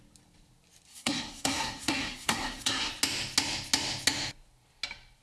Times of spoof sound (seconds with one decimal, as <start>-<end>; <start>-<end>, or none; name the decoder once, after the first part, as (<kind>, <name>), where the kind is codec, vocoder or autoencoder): 0.9-2.9 (codec, SNAC)